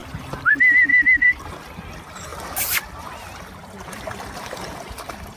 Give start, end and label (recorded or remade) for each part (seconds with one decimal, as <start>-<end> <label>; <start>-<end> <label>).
0.0-0.5 remade; 0.5-0.9 recorded; 0.9-1.4 remade; 1.4-5.4 recorded